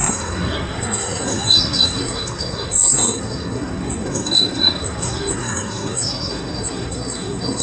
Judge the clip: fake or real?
fake